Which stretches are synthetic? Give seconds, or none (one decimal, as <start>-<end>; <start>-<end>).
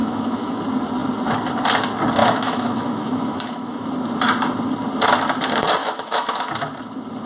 0.0-0.6; 2.2-3.9; 5.8-6.5